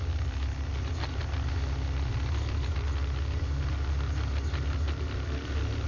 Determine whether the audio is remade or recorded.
recorded